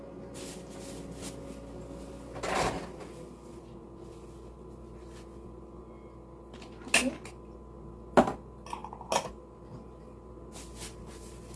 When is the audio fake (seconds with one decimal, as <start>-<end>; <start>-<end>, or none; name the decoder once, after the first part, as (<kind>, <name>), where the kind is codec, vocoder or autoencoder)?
none